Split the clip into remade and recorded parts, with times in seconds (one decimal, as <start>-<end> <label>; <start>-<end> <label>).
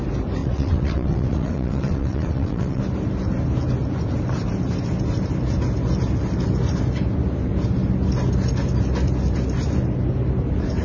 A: 0.0-0.4 recorded; 0.4-2.8 remade; 2.8-10.8 recorded